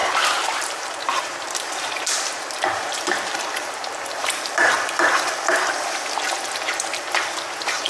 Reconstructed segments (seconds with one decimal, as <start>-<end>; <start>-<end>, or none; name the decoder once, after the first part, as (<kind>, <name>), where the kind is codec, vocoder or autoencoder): 0.0-4.7 (vocoder, BigVGAN v2)

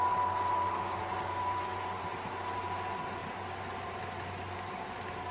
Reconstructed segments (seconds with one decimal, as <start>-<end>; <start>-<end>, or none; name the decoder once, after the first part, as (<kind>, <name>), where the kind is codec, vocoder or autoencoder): 3.2-4.0 (vocoder, BigVGAN v2)

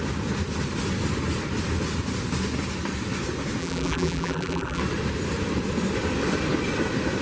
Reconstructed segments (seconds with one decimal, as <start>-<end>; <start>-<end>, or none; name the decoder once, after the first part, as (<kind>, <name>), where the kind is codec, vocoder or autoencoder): 3.6-4.8 (vocoder, BigVGAN v2)

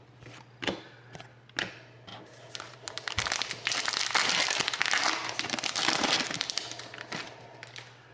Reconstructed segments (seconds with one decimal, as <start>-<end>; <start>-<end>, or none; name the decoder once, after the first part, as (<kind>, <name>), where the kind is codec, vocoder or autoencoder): 2.1-3.3 (vocoder, BigVGAN v2)

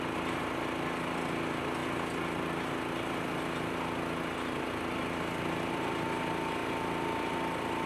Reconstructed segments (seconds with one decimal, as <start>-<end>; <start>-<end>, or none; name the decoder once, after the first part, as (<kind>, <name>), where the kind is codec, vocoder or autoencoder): 6.6-7.3 (vocoder, BigVGAN v2)

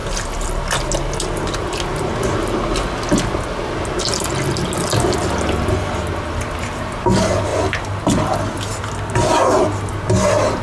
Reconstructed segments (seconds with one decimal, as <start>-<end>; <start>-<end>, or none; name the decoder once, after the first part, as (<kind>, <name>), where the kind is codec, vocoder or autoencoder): none

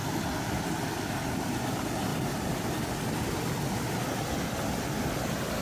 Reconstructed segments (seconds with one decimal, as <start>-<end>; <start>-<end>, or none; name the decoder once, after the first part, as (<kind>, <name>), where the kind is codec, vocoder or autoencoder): none